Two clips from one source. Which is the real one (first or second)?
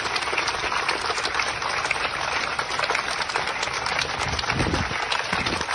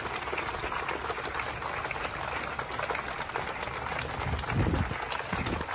second